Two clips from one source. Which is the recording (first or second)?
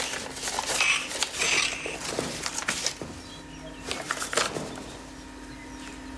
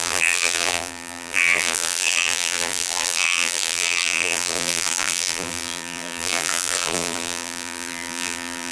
first